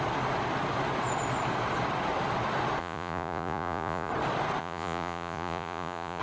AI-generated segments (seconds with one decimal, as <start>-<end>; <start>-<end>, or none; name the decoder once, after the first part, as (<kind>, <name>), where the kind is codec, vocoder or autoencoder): 2.8-4.1 (vocoder, Vocos); 4.6-6.2